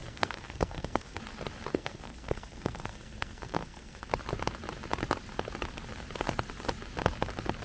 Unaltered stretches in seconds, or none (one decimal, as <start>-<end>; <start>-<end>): 1.2-1.7; 4.1-7.6